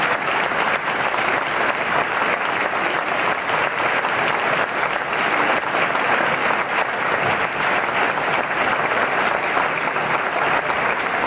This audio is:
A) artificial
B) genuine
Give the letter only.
B